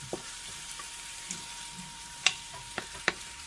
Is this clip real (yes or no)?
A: no